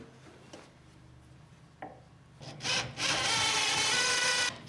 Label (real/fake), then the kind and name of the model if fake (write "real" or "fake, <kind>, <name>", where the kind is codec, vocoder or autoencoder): real